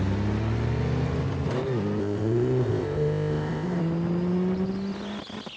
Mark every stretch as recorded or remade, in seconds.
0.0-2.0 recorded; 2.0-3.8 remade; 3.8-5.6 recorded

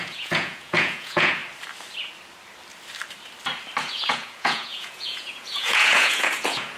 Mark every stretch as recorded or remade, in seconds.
0.0-1.4 remade; 1.4-3.8 recorded; 3.8-6.8 remade